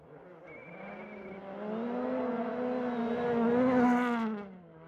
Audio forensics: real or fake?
real